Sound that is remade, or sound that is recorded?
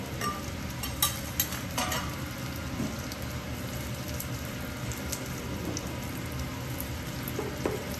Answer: recorded